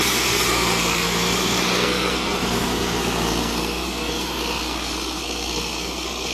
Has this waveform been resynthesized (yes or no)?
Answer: yes